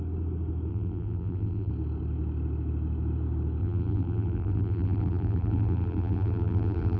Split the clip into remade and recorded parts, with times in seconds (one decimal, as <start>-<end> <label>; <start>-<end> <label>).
0.0-0.7 recorded; 0.7-1.7 remade; 1.7-3.6 recorded; 3.6-7.0 remade